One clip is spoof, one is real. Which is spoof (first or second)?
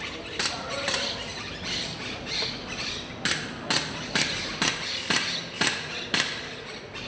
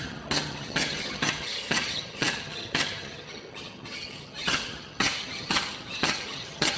second